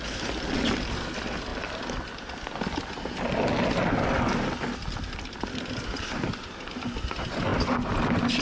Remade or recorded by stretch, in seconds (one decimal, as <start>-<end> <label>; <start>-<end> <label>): 0.0-8.4 recorded

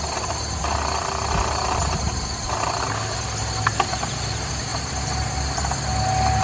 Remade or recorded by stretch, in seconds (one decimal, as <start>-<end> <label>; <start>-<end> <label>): 0.0-6.4 recorded

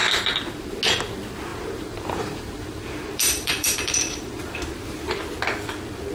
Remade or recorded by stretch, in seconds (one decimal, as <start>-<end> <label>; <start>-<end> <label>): 0.0-1.5 recorded; 1.5-5.2 remade; 5.2-6.1 recorded